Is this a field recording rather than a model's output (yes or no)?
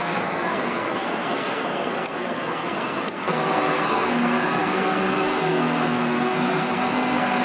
no